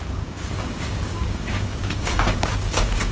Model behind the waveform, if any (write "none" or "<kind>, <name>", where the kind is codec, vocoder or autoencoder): codec, DAC